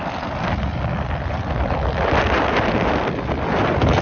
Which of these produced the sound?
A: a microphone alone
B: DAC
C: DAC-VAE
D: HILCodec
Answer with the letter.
A